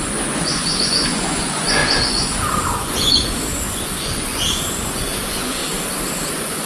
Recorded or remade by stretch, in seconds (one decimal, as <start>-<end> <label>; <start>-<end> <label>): 0.0-5.6 remade; 5.6-6.3 recorded; 6.3-6.7 remade